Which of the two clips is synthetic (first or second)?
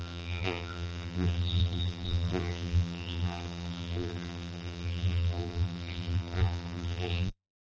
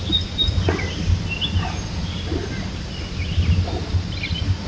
first